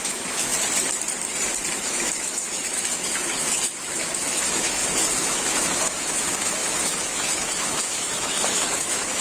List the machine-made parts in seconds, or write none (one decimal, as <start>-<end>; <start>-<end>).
0.0-0.5; 1.7-9.2